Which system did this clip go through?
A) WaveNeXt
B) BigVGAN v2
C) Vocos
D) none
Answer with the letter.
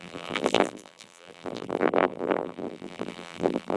B